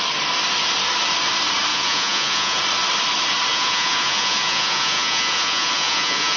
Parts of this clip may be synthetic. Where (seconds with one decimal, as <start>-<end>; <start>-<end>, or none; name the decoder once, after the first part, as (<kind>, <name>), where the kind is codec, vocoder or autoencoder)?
1.7-2.6 (vocoder, Vocos); 3.5-6.4